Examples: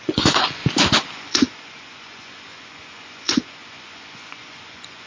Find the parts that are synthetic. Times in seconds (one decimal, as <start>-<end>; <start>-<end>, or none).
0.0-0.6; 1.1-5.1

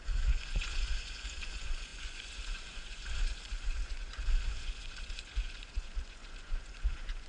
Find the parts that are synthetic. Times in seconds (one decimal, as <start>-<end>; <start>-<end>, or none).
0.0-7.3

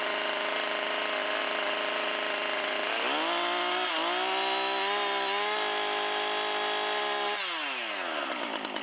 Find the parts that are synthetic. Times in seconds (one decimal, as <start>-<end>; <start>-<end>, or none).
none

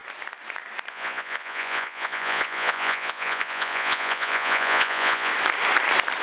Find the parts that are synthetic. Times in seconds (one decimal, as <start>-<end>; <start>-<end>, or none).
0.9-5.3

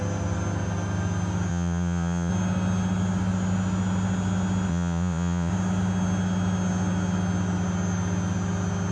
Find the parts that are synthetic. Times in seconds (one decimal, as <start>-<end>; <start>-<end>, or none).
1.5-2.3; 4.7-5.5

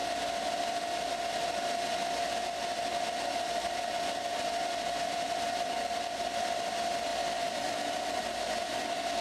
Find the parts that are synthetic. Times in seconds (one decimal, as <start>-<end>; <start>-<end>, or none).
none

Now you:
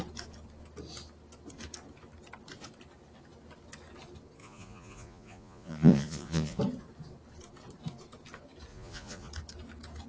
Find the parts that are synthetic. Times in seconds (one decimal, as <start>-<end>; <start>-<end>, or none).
4.4-6.6; 8.7-9.3

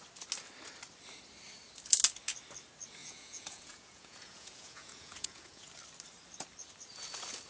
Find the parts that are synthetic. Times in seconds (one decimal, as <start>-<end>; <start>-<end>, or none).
3.0-5.7